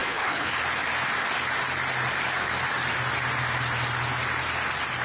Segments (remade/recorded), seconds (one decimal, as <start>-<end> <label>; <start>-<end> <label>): 0.0-0.5 remade; 0.5-5.0 recorded